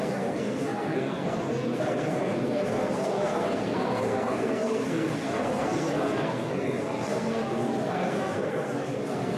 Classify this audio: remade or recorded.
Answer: remade